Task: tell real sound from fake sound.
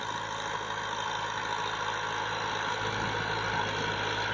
real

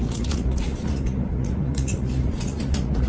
fake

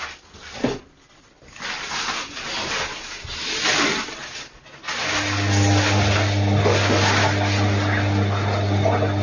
real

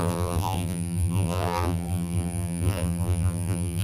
fake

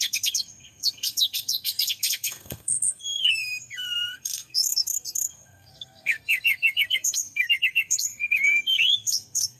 fake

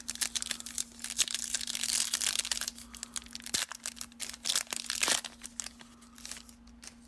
real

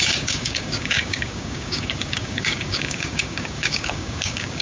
fake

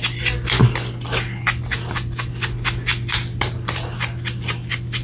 real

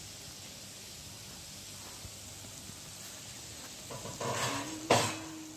real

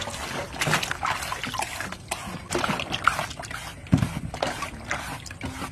real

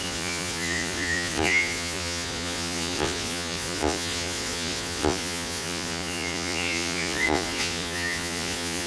fake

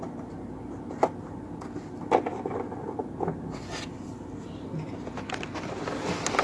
real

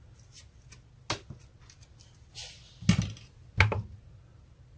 real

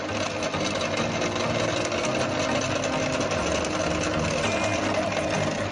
real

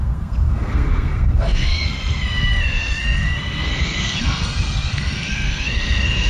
fake